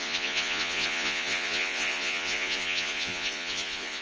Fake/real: fake